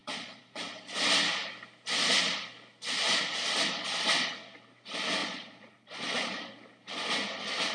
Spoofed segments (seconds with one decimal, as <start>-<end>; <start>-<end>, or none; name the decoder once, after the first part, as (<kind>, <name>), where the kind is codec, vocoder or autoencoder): 0.0-0.6 (vocoder, Vocos); 5.2-6.5